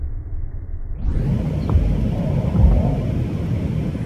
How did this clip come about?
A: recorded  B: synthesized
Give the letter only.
A